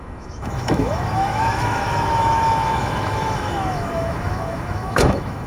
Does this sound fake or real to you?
fake